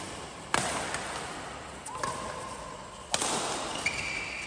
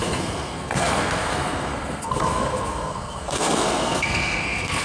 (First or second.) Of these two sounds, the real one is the first